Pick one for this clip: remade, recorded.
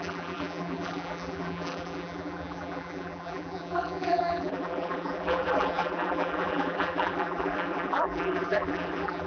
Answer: remade